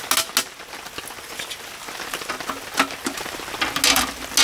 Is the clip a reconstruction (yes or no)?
no